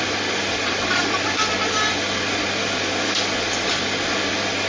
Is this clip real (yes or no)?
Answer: yes